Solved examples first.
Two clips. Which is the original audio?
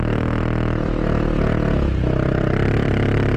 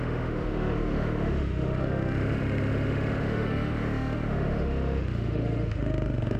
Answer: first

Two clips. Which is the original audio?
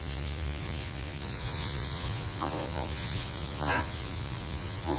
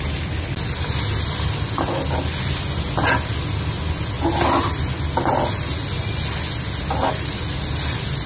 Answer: second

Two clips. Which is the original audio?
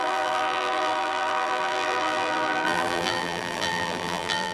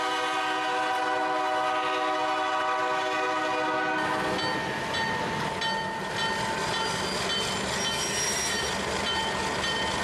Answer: second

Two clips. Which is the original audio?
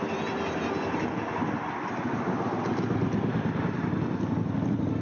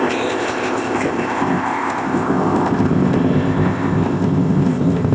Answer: first